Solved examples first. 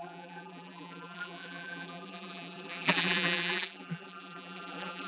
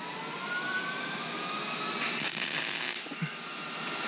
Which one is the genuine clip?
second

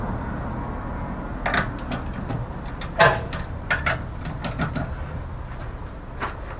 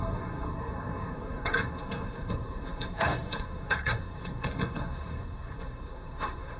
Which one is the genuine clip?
first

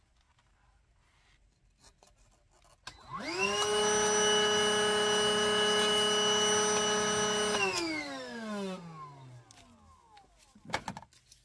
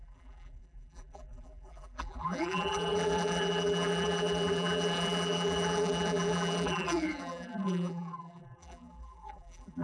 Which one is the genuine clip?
first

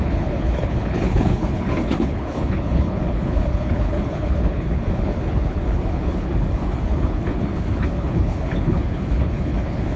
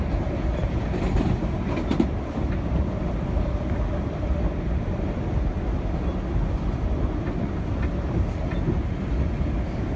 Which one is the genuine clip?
second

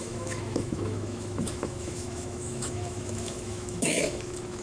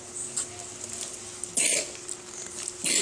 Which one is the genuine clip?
second